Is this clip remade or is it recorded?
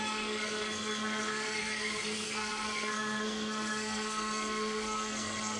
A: remade